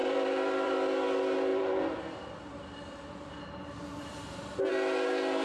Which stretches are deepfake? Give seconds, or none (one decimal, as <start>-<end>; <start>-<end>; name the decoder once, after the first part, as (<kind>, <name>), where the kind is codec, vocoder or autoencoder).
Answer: 0.0-0.7 (vocoder, BigVGAN v2); 1.5-4.7